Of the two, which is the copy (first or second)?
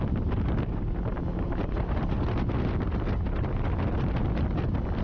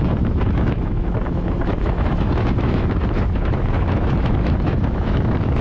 second